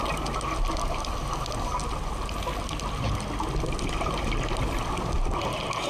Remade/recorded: recorded